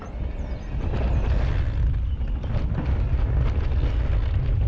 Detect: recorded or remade recorded